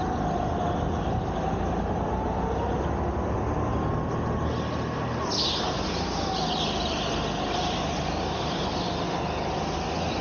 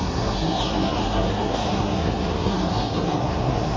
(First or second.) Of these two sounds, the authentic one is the first